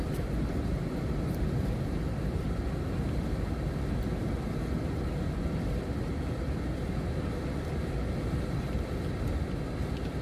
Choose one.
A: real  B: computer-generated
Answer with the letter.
A